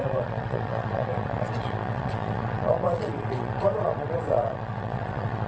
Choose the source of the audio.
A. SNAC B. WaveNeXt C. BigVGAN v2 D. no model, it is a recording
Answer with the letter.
B